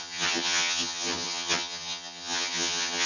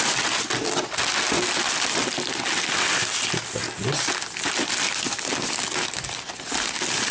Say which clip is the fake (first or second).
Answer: first